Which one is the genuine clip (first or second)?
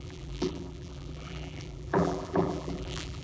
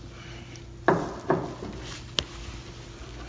second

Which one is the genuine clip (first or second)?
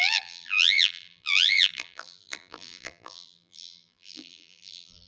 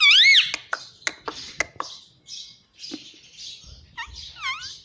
second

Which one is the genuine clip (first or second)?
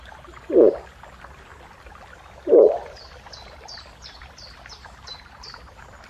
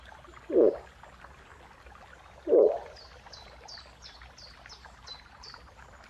second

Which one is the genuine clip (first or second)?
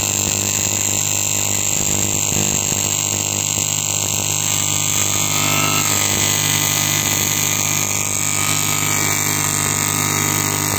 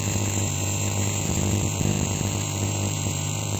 first